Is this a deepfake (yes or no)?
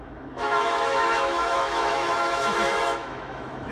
yes